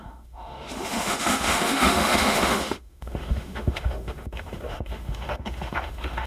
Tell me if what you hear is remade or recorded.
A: remade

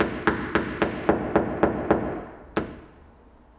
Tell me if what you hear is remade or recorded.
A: recorded